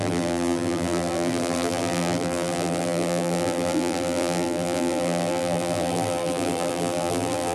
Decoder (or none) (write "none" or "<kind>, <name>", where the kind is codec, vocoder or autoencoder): vocoder, BigVGAN v2